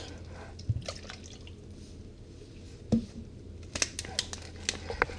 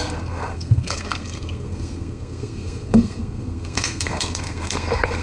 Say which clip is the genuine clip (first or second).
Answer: first